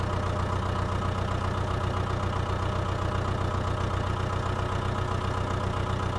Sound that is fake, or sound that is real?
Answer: real